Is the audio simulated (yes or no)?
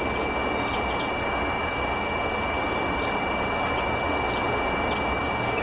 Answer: no